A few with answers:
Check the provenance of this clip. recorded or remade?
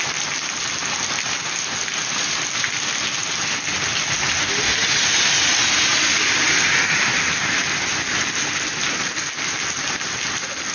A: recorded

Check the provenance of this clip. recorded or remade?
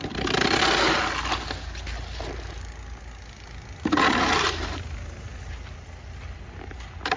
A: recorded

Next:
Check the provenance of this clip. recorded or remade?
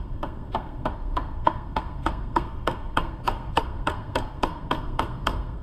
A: remade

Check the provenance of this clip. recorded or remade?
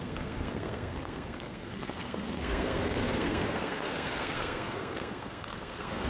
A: remade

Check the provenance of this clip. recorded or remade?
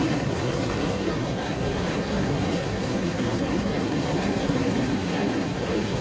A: remade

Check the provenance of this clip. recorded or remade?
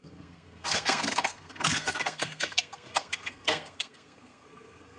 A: remade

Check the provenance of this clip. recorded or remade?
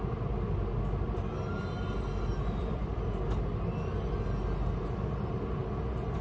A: recorded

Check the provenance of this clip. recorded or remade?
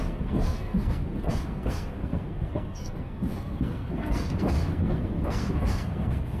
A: remade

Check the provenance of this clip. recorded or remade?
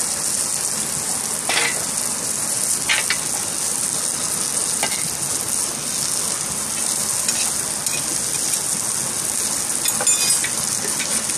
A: recorded